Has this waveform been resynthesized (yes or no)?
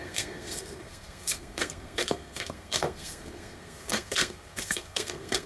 yes